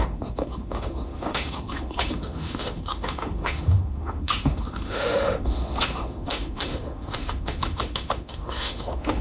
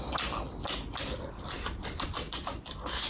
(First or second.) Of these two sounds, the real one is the second